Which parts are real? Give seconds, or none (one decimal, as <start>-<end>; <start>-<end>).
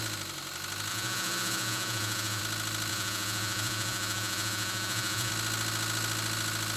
0.0-0.9; 2.4-2.9; 5.3-6.8